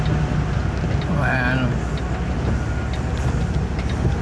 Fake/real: real